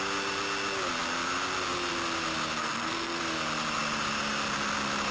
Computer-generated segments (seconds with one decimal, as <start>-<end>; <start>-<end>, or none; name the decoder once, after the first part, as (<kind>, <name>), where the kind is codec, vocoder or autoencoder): 2.6-3.2 (codec, SNAC)